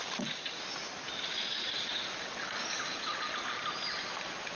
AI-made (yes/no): no